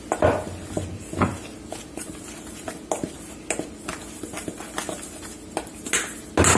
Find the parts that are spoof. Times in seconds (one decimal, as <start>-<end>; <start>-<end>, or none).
none